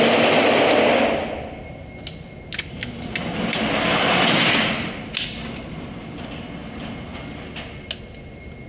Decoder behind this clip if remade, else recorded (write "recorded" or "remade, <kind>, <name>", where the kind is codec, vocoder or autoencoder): recorded